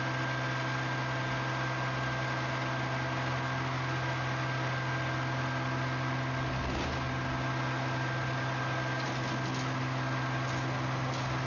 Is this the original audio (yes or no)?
yes